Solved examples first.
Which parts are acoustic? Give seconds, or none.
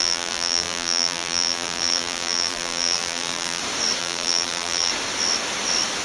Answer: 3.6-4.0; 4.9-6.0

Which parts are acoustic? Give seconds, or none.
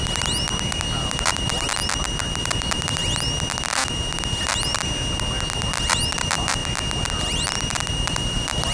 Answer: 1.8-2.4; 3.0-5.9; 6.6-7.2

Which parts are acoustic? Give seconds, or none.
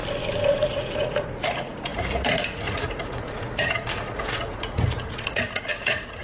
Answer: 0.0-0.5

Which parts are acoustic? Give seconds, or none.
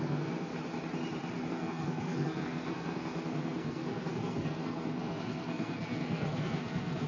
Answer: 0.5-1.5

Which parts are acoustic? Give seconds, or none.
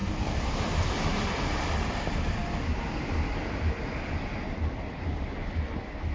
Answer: 0.0-6.1